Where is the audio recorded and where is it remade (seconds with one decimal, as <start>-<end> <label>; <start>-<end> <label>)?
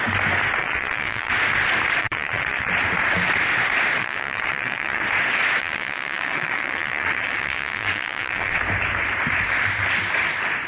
0.0-0.6 recorded; 0.6-1.3 remade; 1.3-2.0 recorded; 2.0-2.7 remade; 2.7-4.0 recorded; 4.0-5.0 remade; 5.0-5.6 recorded; 5.6-8.6 remade; 8.6-10.7 recorded